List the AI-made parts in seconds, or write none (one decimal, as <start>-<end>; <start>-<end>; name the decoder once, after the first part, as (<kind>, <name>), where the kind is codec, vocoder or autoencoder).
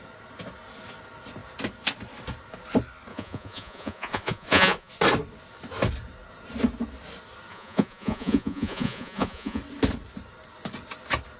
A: 3.1-4.9 (vocoder, Vocos); 7.5-9.6